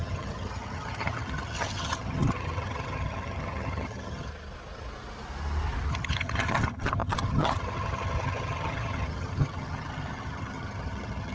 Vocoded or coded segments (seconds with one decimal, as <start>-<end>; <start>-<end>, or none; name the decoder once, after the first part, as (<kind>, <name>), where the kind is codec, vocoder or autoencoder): 0.0-4.3 (vocoder, HiFi-GAN); 5.9-11.3